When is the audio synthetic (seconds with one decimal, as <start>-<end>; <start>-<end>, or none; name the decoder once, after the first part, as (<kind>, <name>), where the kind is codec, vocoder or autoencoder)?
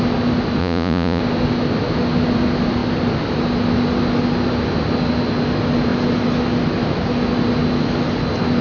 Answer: 0.6-1.2 (vocoder, Vocos)